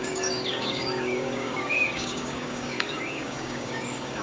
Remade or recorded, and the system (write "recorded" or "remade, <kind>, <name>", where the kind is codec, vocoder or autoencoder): remade, codec, DAC